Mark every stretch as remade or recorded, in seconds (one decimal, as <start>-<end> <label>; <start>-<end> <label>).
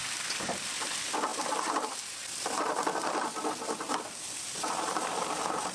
0.0-0.7 remade; 0.7-5.7 recorded